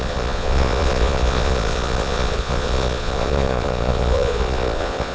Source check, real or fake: fake